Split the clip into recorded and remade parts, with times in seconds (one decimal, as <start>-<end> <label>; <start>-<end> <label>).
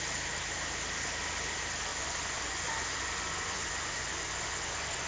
0.0-1.9 recorded; 1.9-5.1 remade